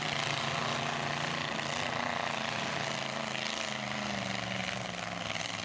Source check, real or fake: real